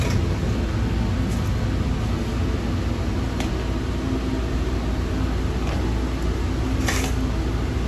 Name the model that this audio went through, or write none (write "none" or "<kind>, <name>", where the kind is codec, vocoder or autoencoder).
none